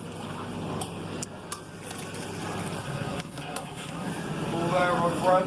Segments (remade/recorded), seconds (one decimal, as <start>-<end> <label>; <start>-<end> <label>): 0.0-2.8 recorded; 2.8-4.1 remade; 4.1-5.5 recorded